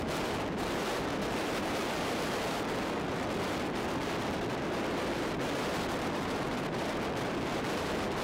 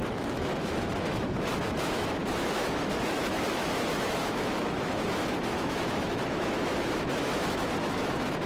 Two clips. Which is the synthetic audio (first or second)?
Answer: second